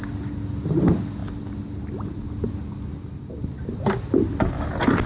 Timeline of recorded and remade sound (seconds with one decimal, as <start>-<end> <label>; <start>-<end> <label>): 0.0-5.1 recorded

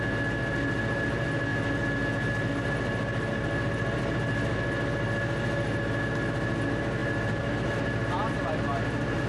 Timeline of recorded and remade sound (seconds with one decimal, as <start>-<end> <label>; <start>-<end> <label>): 0.0-7.0 recorded; 7.0-7.8 remade; 7.8-9.3 recorded

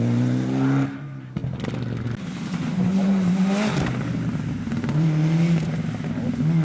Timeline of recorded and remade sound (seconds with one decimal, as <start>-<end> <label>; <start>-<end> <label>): 0.0-6.6 recorded